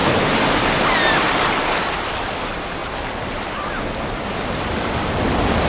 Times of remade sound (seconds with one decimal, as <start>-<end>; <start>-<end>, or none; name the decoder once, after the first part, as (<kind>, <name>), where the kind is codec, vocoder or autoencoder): none